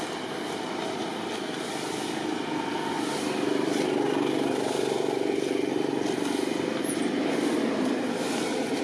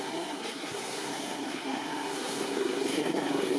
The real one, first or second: first